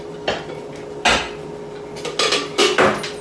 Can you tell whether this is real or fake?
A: real